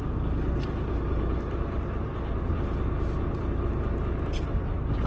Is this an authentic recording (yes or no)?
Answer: yes